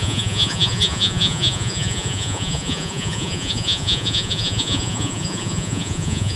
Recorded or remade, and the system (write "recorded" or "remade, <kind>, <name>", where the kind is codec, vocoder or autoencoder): remade, vocoder, Vocos